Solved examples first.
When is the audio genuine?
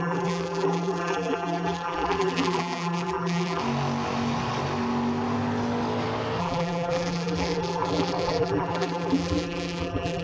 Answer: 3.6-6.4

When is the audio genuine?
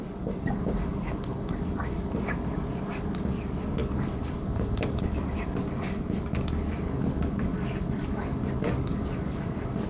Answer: none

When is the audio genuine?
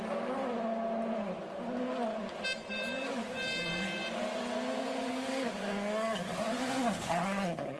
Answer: 0.4-2.7; 4.0-5.1; 6.3-7.2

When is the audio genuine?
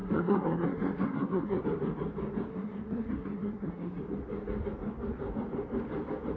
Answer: 1.6-2.5; 4.0-6.4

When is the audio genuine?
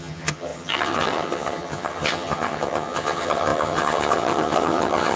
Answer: none